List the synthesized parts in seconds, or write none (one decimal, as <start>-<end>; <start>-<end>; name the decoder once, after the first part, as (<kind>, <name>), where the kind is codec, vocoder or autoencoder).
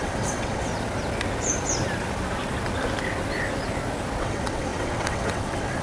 0.0-0.7 (vocoder, WaveNeXt); 4.2-5.8